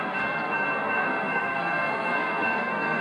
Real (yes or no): no